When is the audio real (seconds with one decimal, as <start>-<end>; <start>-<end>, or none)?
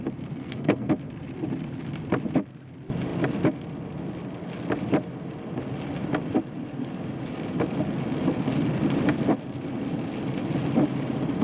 0.0-0.4; 0.9-11.4